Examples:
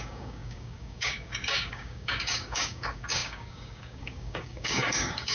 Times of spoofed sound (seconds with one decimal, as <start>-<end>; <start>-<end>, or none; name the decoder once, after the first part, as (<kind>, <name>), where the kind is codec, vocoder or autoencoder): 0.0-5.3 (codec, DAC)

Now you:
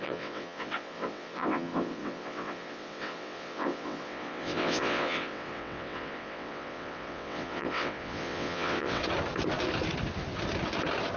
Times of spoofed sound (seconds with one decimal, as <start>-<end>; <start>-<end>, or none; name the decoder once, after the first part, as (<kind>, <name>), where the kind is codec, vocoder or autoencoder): 0.0-9.0 (vocoder, WaveNeXt)

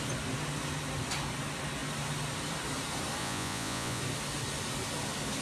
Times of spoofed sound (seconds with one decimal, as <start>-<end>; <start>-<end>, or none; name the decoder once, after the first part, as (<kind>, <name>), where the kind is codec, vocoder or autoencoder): 3.2-4.0 (vocoder, Vocos)

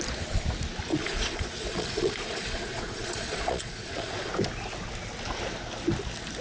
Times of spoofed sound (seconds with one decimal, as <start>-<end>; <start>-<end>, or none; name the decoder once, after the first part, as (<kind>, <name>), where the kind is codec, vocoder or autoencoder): 0.9-4.3 (vocoder, Vocos)

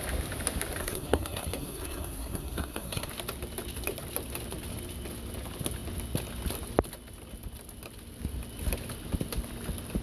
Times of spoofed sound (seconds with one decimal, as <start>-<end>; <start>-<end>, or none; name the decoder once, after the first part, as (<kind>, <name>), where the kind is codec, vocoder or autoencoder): 0.8-3.1 (codec, SNAC)

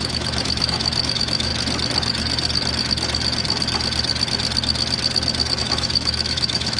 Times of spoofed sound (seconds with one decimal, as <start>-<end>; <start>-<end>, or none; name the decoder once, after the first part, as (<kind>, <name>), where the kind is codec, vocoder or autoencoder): 0.0-1.5 (autoencoder, DAC-VAE); 5.6-6.8

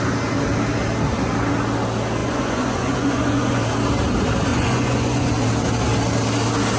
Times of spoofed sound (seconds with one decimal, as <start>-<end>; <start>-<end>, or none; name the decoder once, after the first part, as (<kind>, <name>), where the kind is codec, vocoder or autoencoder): 2.2-3.6 (vocoder, Vocos); 4.5-5.3

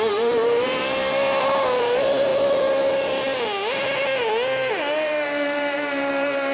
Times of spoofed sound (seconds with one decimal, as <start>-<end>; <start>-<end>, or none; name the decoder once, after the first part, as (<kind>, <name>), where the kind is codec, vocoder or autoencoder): 0.0-2.3 (vocoder, BigVGAN v2); 4.7-6.5